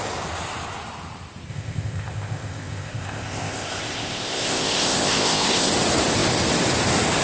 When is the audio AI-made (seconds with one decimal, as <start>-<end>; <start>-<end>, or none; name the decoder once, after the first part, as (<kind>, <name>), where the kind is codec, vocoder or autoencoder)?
1.5-5.7 (codec, ZipCodec)